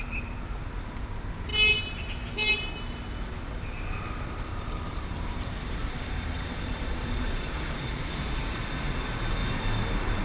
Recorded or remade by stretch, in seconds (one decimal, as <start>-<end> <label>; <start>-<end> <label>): 0.0-4.5 recorded; 4.5-8.1 remade; 8.1-9.4 recorded; 9.4-10.2 remade